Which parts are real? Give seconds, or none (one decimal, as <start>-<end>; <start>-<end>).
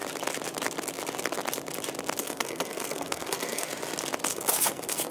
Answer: 0.0-2.2; 3.7-4.3